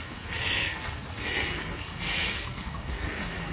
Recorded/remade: remade